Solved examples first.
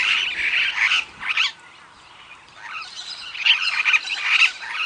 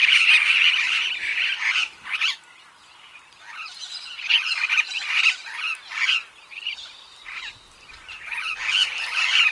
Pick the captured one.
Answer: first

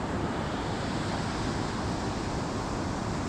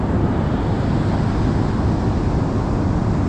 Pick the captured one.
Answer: second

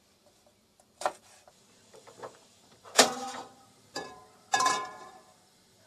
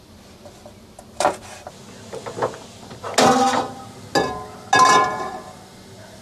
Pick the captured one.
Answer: second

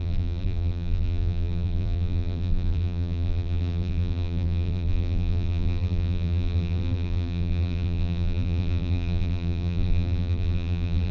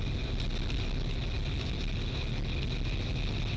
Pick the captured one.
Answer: second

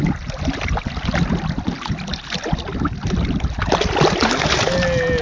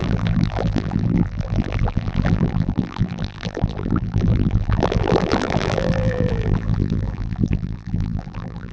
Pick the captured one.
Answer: first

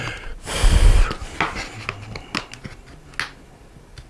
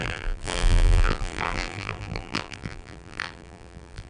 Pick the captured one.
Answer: first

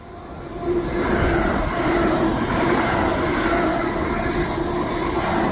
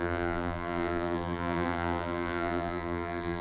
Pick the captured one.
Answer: first